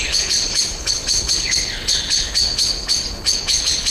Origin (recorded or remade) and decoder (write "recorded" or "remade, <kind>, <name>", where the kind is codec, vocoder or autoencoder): remade, codec, HILCodec